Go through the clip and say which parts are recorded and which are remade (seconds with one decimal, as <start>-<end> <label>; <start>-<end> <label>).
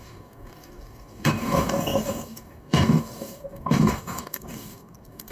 0.0-5.3 remade